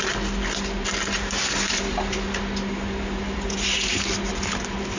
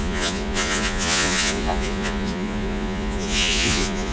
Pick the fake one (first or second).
second